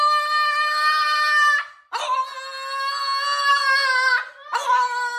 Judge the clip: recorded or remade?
recorded